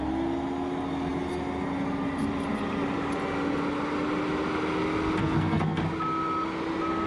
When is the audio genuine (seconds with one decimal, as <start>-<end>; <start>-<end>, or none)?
0.0-5.2; 5.8-7.1